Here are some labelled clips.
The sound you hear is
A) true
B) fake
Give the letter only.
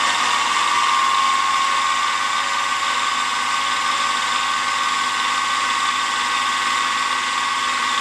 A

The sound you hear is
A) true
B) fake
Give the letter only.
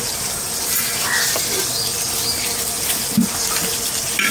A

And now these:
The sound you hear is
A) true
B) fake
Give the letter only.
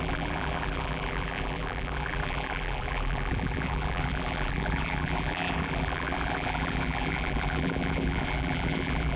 B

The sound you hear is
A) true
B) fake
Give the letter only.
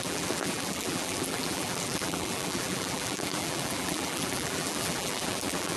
B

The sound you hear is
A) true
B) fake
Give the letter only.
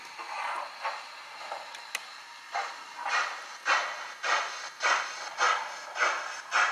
A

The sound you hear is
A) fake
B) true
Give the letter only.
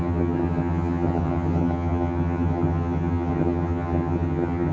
A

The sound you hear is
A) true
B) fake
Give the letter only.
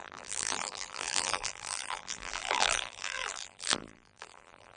B